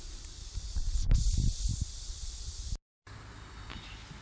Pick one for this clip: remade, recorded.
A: recorded